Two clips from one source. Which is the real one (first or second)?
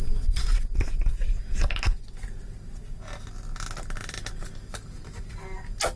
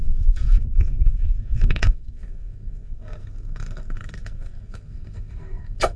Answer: first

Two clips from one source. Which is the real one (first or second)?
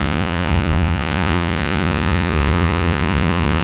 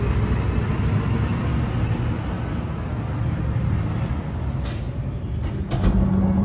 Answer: second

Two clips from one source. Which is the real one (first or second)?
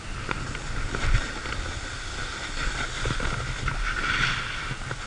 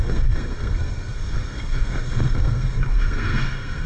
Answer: first